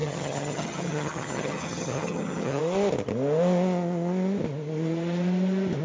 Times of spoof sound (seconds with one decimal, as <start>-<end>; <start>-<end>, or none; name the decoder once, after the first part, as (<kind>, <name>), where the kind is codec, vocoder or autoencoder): 0.0-2.6 (vocoder, HiFi-GAN)